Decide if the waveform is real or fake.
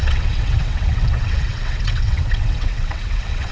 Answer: fake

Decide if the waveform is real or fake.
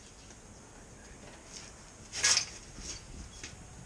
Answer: real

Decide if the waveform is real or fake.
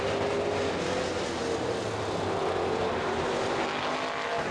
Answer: real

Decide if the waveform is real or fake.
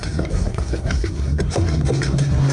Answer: fake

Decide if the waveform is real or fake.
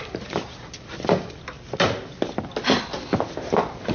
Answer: real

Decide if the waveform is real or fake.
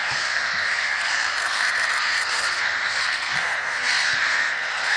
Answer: fake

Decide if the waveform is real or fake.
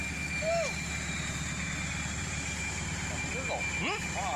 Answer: real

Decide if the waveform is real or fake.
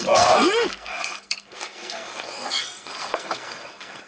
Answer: fake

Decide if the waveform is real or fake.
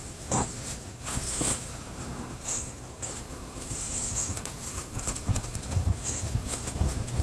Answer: fake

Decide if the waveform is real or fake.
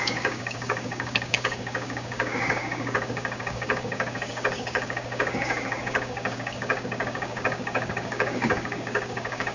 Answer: fake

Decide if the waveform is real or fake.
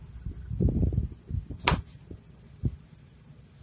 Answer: real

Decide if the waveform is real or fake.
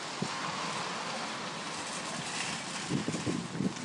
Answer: real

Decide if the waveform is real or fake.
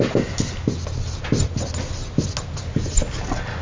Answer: real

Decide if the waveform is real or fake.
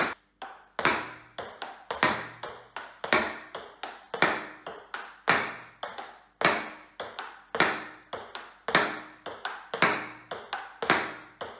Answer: real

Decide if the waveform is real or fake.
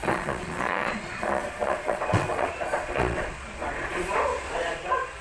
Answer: fake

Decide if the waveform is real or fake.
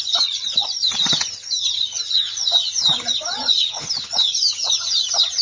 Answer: fake